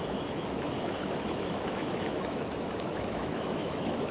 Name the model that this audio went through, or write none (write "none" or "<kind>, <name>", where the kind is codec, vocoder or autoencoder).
autoencoder, DAC-VAE